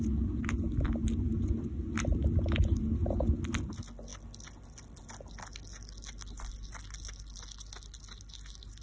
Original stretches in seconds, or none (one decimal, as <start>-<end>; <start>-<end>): 0.0-8.8